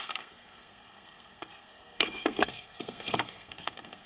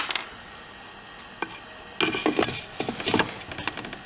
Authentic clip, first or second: second